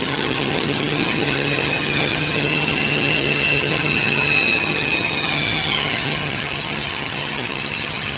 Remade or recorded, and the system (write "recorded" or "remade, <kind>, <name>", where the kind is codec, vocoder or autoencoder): remade, vocoder, HiFi-GAN